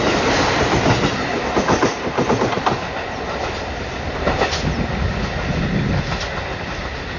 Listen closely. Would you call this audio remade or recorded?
recorded